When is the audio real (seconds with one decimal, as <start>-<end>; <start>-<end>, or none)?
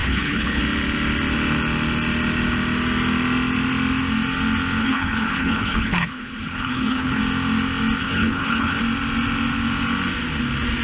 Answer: 0.6-4.8; 7.2-8.0; 8.8-10.8